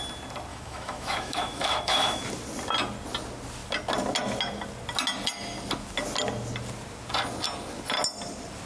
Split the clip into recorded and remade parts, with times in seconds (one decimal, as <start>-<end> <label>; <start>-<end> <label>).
0.0-0.5 recorded; 0.5-2.2 remade; 2.2-8.7 recorded

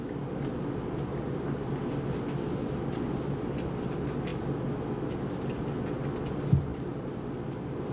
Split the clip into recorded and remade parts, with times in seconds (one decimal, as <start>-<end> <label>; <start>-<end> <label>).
0.0-7.9 recorded

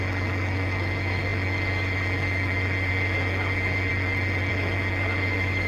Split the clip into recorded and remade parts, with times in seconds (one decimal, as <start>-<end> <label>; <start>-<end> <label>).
0.0-3.9 remade; 3.9-4.5 recorded; 4.5-5.7 remade

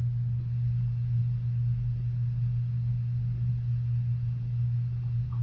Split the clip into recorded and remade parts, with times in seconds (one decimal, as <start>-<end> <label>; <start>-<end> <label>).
0.0-5.4 recorded

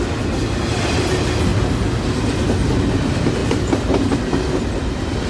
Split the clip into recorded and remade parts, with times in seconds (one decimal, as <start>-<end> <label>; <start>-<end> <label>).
0.0-5.3 recorded

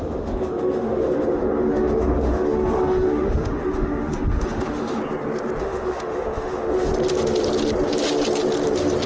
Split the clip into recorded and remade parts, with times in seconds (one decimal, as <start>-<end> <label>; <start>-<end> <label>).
0.0-5.0 remade; 5.0-5.6 recorded; 5.6-6.9 remade; 6.9-9.1 recorded